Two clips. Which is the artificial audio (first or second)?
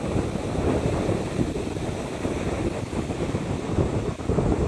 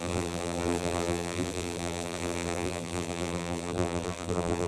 second